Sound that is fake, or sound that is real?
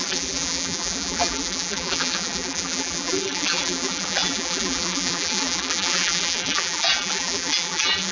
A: fake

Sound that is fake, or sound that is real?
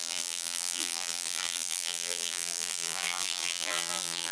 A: fake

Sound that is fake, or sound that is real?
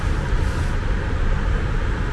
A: fake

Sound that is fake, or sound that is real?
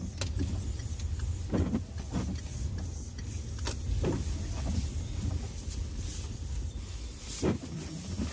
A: real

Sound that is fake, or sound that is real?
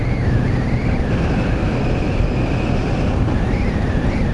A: real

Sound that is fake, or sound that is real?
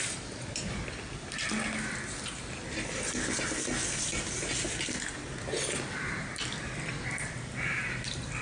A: real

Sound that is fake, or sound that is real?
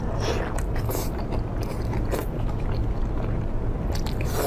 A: real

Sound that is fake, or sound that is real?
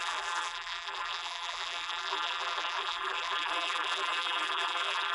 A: fake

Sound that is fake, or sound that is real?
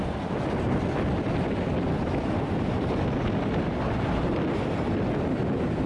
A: real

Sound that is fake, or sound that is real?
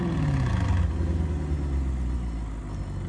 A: real